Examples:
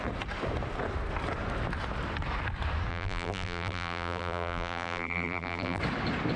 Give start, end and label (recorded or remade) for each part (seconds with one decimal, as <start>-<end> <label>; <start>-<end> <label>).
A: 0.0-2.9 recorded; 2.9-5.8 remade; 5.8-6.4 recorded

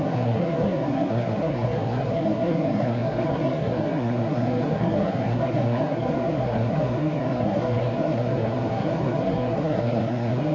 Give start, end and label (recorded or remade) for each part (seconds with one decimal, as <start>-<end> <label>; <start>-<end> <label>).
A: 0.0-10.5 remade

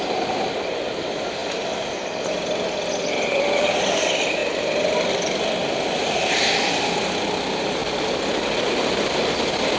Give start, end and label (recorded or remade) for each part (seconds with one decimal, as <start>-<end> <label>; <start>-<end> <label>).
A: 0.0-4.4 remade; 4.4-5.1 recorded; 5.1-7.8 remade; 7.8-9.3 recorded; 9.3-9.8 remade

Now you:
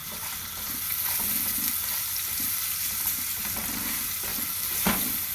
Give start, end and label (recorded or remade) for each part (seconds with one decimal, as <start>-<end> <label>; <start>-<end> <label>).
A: 0.0-5.3 recorded